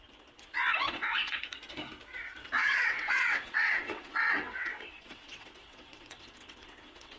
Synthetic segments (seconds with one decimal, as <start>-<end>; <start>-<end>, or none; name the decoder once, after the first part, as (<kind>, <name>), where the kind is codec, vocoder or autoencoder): 0.8-1.4 (vocoder, WaveNeXt); 2.6-7.2